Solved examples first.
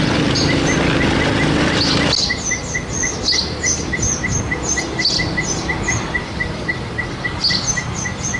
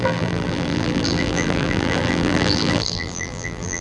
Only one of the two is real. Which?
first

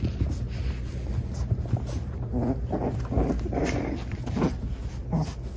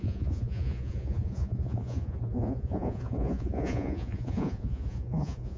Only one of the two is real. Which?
first